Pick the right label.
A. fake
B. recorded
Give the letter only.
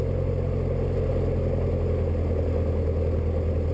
B